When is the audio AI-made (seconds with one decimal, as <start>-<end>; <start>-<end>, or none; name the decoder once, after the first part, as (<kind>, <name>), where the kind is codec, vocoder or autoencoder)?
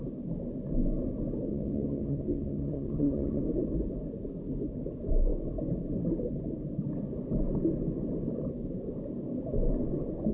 1.5-3.4 (vocoder, HiFi-GAN)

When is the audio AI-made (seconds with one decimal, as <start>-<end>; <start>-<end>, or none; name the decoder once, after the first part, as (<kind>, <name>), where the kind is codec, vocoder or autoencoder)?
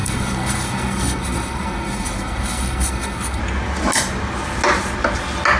0.0-3.4 (codec, SNAC)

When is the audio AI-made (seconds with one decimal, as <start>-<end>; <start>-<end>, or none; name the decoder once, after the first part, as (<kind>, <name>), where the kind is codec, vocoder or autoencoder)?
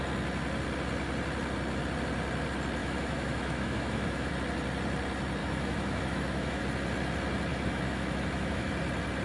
2.8-4.3 (autoencoder, DAC-VAE); 5.4-6.6; 7.5-8.7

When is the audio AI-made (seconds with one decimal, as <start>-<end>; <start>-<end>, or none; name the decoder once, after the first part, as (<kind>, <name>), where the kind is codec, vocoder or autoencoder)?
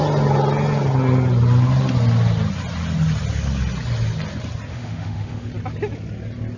4.7-5.5 (autoencoder, DAC-VAE)